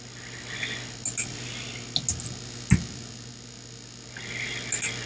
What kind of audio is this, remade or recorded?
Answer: recorded